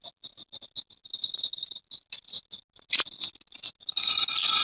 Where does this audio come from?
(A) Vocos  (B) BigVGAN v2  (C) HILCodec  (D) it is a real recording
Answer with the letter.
D